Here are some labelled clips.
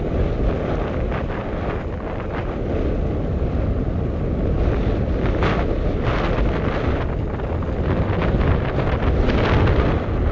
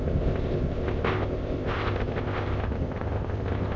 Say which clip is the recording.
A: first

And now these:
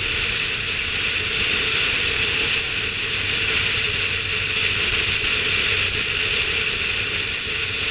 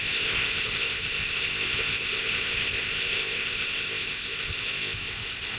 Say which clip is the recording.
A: first